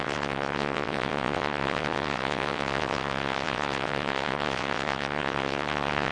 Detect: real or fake fake